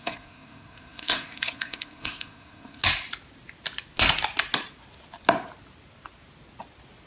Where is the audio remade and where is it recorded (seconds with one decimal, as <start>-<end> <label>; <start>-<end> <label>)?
0.0-2.8 remade; 2.8-7.1 recorded